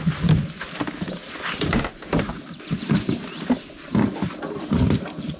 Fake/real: real